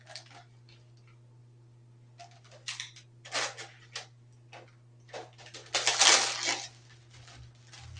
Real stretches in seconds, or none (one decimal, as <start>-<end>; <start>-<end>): 0.0-8.0